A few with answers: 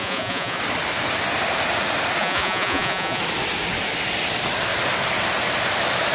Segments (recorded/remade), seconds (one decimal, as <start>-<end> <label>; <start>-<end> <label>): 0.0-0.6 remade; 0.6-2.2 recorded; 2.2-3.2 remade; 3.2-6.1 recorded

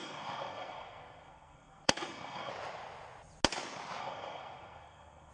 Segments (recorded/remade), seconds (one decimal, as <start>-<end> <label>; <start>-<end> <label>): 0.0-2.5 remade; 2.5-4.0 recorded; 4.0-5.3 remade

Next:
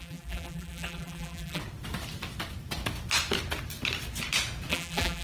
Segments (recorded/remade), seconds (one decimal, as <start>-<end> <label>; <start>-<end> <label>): 0.0-1.6 remade; 1.6-4.7 recorded; 4.7-5.2 remade

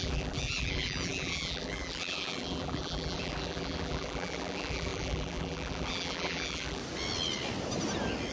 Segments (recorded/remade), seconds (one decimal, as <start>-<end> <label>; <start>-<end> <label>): 0.0-6.8 remade; 6.8-8.3 recorded

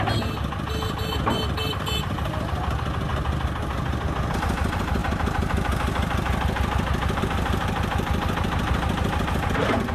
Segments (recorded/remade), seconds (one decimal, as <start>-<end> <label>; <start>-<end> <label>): 0.0-9.9 recorded

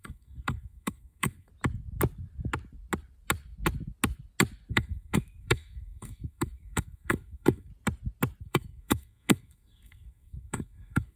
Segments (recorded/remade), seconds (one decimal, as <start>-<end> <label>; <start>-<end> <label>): 0.0-1.5 remade; 1.5-4.7 recorded; 4.7-7.7 remade; 7.7-8.4 recorded; 8.4-11.2 remade

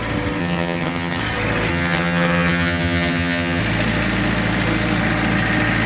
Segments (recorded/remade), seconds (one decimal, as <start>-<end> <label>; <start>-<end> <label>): 0.0-0.4 recorded; 0.4-1.2 remade; 1.2-1.7 recorded; 1.7-3.6 remade; 3.6-5.9 recorded